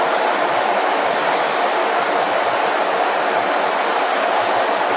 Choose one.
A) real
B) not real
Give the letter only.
A